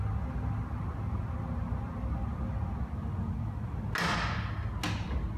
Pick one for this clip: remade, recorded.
recorded